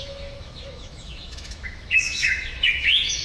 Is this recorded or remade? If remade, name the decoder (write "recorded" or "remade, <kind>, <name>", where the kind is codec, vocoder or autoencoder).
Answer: remade, autoencoder, DAC-VAE